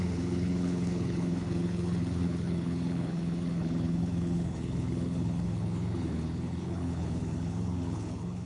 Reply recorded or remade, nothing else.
remade